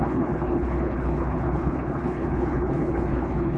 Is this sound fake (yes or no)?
yes